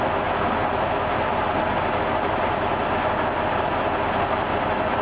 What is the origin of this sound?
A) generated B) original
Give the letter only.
B